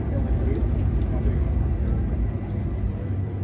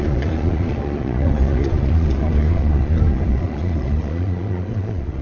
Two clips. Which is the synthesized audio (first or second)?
second